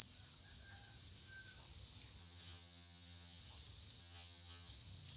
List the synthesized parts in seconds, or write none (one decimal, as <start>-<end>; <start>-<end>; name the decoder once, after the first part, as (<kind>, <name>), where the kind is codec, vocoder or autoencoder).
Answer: 2.2-3.4 (vocoder, HiFi-GAN); 4.0-4.7